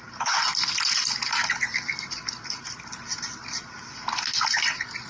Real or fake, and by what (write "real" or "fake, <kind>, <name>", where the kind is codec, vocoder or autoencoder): real